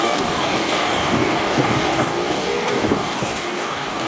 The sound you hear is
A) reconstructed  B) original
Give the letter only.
A